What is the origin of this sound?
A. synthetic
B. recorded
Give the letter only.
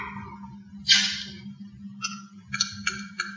B